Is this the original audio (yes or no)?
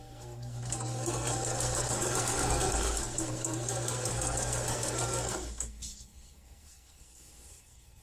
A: no